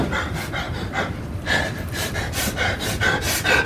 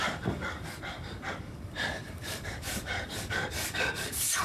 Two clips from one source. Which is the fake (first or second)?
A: second